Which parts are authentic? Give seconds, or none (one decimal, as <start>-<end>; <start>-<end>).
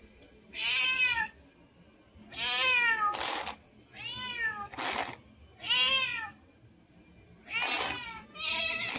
0.0-0.6; 1.2-6.1; 6.9-9.0